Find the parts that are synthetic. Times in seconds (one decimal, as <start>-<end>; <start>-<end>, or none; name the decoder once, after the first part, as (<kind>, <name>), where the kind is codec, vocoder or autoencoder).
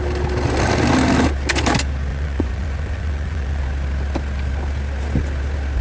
2.1-3.6 (vocoder, Vocos)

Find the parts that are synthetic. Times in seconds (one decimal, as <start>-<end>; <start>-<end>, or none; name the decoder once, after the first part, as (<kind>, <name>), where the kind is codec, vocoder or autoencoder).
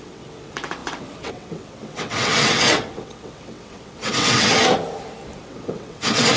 0.0-4.6 (vocoder, WaveNeXt); 5.4-6.4